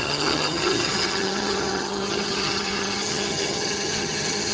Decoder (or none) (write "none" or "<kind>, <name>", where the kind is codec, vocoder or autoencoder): vocoder, HiFi-GAN